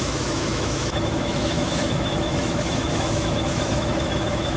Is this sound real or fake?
fake